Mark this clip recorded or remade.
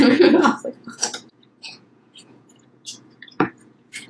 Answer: remade